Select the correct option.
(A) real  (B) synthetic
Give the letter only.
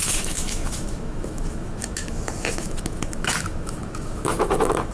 B